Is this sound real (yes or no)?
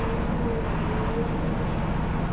yes